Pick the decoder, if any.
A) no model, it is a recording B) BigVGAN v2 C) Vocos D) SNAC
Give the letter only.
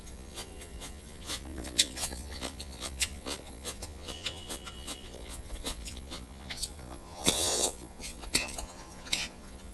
C